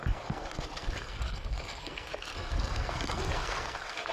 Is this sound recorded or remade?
remade